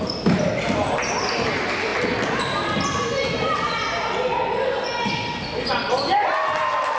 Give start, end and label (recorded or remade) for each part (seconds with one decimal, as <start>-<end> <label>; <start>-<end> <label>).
0.0-7.0 recorded